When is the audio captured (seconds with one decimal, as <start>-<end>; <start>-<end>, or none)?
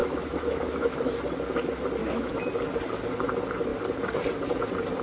1.0-2.0; 2.5-5.0